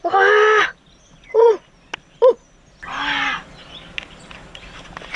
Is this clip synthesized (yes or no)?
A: no